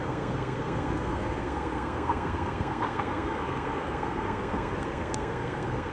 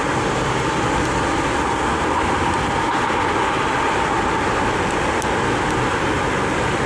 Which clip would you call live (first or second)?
second